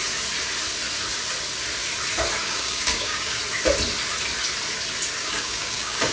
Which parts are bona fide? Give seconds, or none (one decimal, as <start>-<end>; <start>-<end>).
0.0-2.4; 3.4-5.3